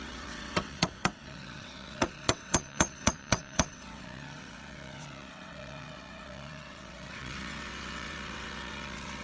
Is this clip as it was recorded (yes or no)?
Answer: no